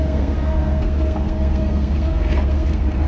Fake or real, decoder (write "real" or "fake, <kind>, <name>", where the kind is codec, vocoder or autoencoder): fake, codec, SNAC